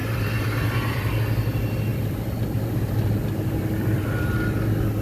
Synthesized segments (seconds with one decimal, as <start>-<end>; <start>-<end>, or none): 0.0-1.2; 1.9-4.4